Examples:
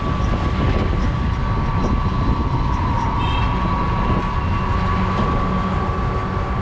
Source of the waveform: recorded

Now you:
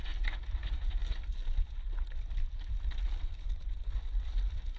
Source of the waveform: recorded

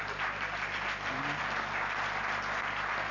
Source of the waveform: recorded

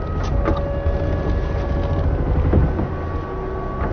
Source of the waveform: recorded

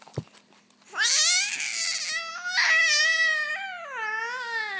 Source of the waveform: recorded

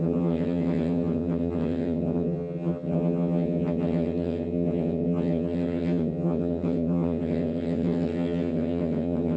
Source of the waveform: remade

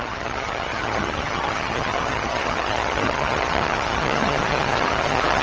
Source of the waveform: remade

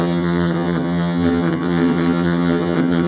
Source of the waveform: remade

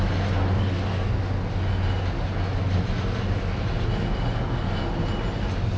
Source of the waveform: recorded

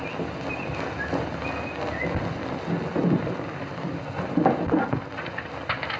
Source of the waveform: recorded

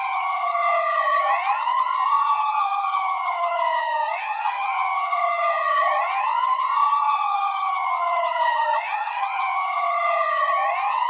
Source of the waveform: remade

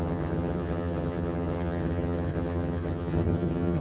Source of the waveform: remade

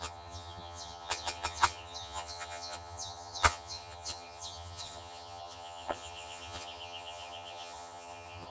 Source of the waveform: remade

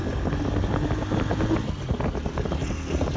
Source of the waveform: recorded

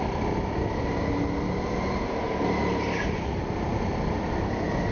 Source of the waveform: recorded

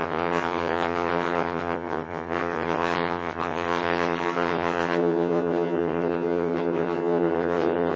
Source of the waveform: remade